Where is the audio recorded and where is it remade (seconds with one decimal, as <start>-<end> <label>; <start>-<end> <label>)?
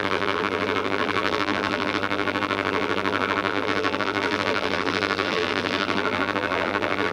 0.0-7.1 remade